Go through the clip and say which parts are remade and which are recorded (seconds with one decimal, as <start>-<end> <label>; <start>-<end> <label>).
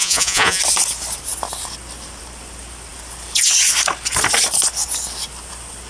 0.0-0.6 remade; 0.6-5.9 recorded